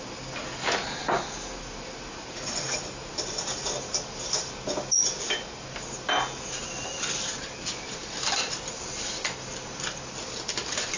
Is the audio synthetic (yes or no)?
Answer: no